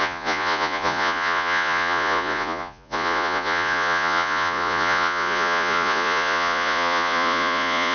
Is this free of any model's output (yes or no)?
no